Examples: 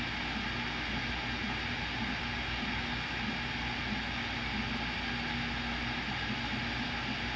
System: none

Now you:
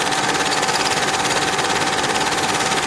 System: none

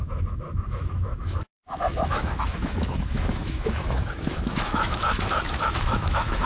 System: autoencoder, DAC-VAE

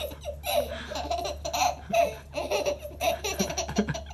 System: none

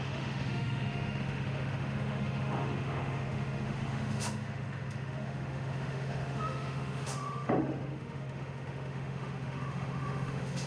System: autoencoder, DAC-VAE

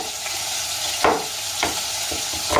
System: none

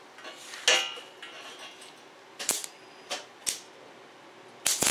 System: none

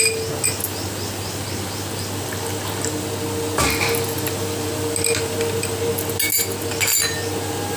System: none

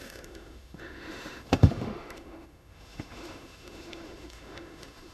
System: autoencoder, DAC-VAE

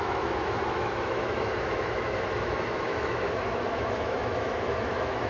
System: autoencoder, DAC-VAE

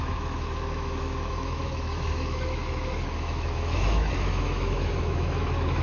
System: autoencoder, DAC-VAE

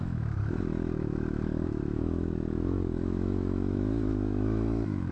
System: autoencoder, DAC-VAE